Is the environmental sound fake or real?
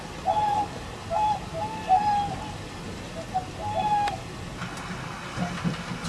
real